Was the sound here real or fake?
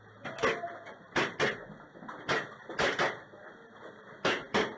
real